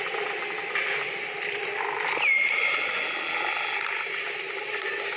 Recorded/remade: recorded